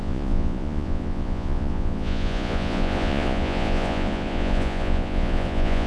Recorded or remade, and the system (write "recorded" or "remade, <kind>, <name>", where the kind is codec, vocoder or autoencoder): remade, vocoder, Vocos